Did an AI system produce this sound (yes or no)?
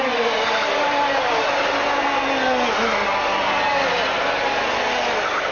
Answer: no